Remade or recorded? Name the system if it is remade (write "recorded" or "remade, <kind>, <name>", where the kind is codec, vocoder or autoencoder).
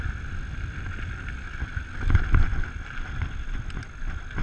recorded